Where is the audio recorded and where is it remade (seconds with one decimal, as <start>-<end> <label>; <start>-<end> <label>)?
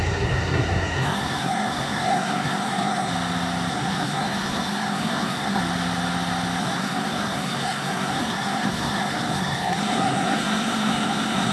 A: 0.0-3.1 remade; 3.1-3.7 recorded; 3.7-5.6 remade; 5.6-6.6 recorded; 6.6-11.5 remade